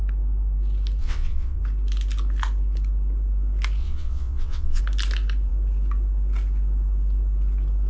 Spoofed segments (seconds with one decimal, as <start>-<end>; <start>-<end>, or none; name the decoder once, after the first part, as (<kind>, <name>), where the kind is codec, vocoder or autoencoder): 1.0-1.6 (vocoder, WaveNeXt); 3.8-4.8